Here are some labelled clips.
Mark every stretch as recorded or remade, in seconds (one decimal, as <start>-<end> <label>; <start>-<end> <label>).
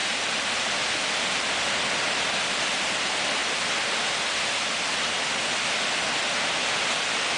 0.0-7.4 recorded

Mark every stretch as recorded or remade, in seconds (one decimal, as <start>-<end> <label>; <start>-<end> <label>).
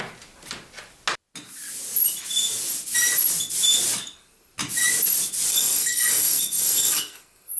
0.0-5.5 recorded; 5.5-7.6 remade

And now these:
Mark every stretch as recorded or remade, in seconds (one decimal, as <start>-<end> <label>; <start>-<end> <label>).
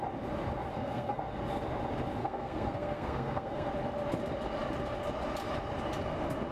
0.0-0.7 recorded; 0.7-1.2 remade; 1.2-2.2 recorded; 2.2-3.7 remade; 3.7-6.5 recorded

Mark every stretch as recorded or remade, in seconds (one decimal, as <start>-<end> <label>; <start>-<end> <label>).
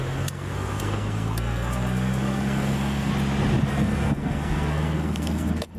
0.0-3.1 remade; 3.1-3.7 recorded; 3.7-5.8 remade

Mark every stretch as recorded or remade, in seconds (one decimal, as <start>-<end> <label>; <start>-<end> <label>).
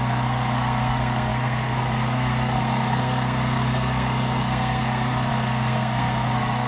0.0-6.7 remade